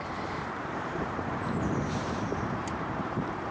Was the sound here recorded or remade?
remade